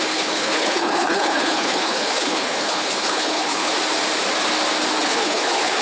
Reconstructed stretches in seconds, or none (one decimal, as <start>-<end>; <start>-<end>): 0.0-3.7; 5.0-5.8